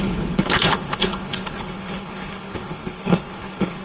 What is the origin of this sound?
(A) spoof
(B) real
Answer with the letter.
A